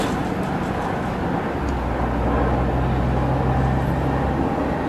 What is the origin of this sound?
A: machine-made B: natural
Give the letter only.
B